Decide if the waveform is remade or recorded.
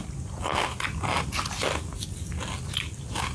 recorded